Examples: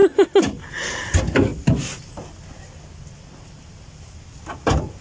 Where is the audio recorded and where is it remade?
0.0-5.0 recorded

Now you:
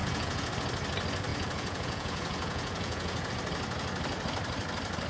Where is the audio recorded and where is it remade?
0.0-0.5 remade; 0.5-1.3 recorded; 1.3-3.3 remade; 3.3-5.1 recorded

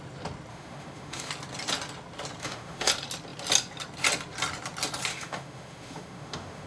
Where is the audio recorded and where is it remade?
0.0-0.5 recorded; 0.5-1.3 remade; 1.3-2.4 recorded; 2.4-2.9 remade; 2.9-5.1 recorded; 5.1-6.7 remade

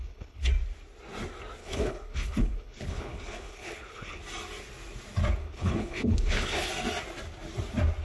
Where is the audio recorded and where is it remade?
0.0-0.5 remade; 0.5-1.6 recorded; 1.6-4.2 remade; 4.2-5.4 recorded; 5.4-6.7 remade; 6.7-8.0 recorded